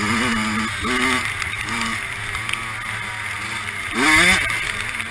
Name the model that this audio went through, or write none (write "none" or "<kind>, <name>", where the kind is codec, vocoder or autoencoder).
none